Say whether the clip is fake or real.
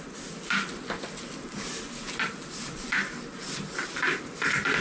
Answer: real